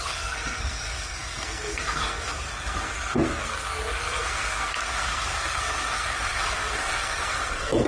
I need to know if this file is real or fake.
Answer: fake